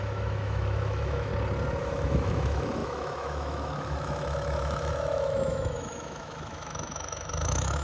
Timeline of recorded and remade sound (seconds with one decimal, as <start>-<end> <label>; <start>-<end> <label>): 0.0-1.3 remade; 1.3-1.8 recorded; 1.8-7.8 remade